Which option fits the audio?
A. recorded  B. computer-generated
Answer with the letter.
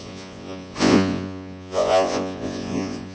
B